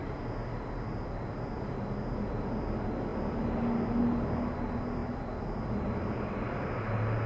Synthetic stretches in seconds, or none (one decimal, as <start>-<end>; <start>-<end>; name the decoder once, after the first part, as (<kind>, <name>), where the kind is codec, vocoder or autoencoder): none